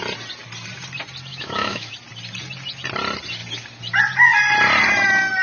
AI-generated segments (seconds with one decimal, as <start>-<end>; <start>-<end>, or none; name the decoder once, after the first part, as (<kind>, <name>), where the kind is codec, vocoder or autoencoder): 1.3-1.9 (autoencoder, DAC-VAE)